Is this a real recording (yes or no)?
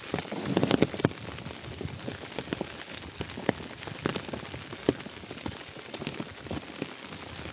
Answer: yes